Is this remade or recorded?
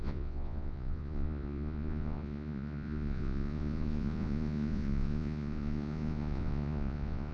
remade